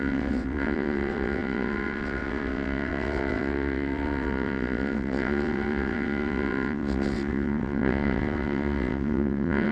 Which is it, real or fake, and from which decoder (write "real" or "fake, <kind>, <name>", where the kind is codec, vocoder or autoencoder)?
fake, vocoder, WaveNeXt